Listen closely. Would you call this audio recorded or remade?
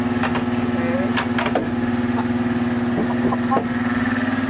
recorded